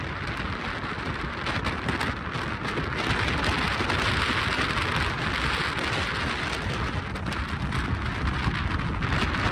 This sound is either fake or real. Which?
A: real